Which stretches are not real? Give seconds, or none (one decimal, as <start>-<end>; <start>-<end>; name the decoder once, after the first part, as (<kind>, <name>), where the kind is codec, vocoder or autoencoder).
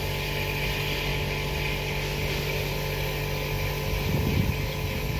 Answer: none